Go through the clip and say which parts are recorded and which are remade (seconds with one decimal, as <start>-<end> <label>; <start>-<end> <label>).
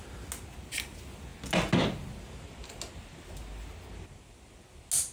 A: 0.0-5.1 recorded